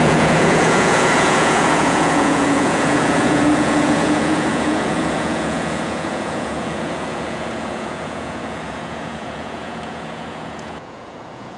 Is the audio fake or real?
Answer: fake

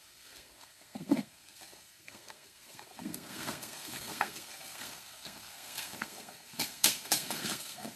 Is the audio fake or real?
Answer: fake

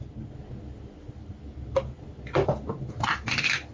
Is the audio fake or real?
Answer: real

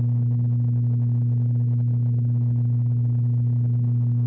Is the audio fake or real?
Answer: real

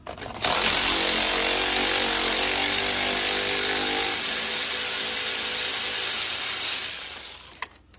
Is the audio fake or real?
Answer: real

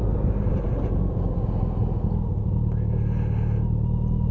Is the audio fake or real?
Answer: real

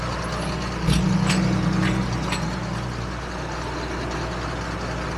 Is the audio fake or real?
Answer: real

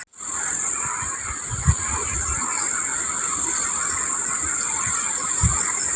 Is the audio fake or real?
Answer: real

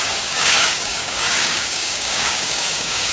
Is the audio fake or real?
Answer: fake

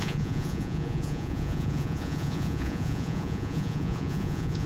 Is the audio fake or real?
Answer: fake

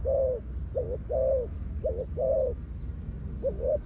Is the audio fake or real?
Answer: real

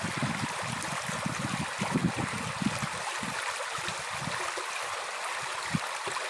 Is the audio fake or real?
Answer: real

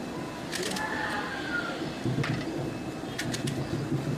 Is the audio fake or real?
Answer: real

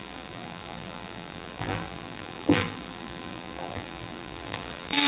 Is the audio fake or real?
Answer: fake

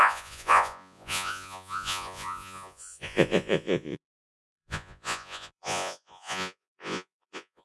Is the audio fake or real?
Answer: fake